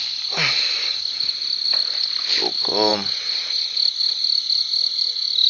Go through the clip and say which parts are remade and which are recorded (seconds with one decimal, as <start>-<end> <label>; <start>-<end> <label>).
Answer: 0.0-0.8 recorded; 0.8-1.3 remade; 1.3-5.5 recorded